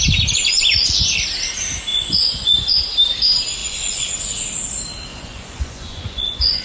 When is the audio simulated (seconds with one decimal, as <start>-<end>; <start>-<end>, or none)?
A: 1.9-2.8; 3.6-4.1; 5.1-6.6